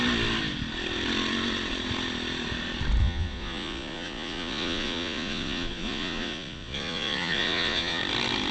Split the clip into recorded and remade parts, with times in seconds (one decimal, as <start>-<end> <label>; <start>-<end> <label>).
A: 0.0-3.0 recorded; 3.0-8.0 remade; 8.0-8.5 recorded